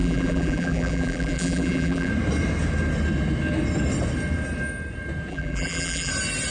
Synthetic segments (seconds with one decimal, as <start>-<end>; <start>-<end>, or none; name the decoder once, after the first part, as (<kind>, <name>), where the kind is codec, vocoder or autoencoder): 0.0-2.1 (vocoder, BigVGAN v2); 5.3-6.1